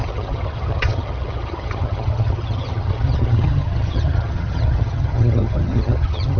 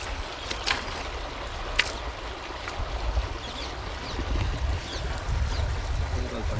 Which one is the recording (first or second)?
second